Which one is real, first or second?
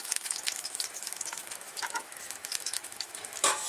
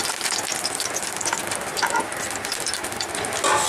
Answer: second